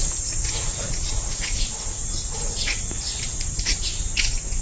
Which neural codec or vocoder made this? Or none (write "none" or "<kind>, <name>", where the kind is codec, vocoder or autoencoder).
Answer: vocoder, Vocos